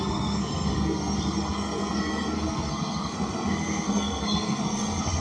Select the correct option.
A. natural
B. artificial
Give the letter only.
B